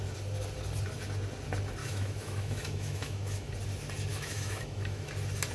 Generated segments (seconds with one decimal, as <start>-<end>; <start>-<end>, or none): 1.8-3.5; 4.1-5.1